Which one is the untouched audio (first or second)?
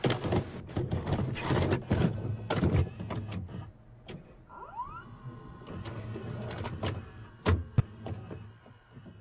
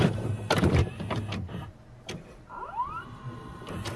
first